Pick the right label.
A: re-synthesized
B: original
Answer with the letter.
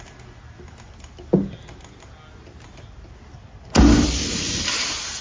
B